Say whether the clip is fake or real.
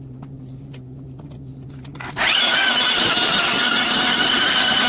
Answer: real